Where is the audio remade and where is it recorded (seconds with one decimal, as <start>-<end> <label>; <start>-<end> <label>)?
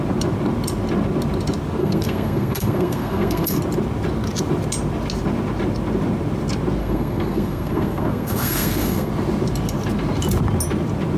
0.0-1.8 recorded; 1.8-3.6 remade; 3.6-6.8 recorded; 6.8-9.1 remade; 9.1-11.2 recorded